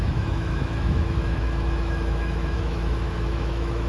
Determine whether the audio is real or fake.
fake